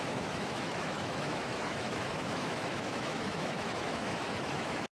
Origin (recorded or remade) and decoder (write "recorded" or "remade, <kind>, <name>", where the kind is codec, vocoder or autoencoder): remade, autoencoder, DAC-VAE